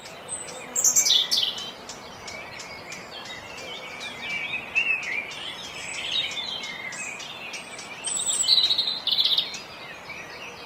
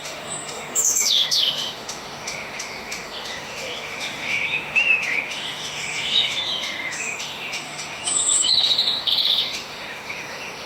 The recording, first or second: first